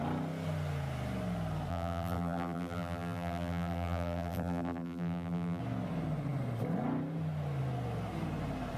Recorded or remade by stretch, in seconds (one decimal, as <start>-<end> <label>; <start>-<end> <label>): 0.0-1.7 recorded; 1.7-5.6 remade; 5.6-8.8 recorded